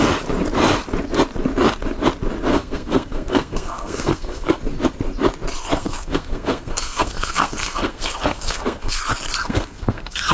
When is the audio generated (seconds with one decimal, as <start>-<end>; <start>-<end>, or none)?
2.5-4.6; 5.8-9.0; 9.4-10.3